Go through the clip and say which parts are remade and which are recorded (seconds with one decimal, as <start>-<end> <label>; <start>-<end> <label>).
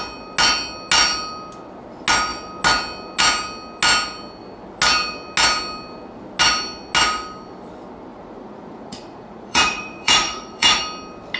0.0-8.1 recorded; 8.1-10.8 remade; 10.8-11.4 recorded